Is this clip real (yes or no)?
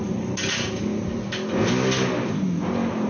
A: yes